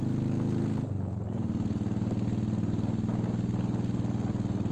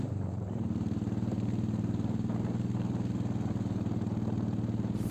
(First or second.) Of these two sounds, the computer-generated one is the second